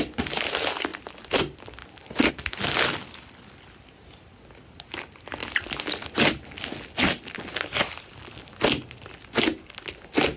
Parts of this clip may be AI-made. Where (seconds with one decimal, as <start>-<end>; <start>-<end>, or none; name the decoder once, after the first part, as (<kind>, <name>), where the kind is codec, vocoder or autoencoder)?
none